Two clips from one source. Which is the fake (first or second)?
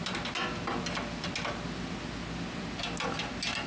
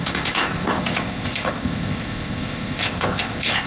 second